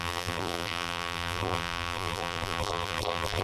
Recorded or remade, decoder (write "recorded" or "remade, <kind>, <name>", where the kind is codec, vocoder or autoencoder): remade, vocoder, BigVGAN v2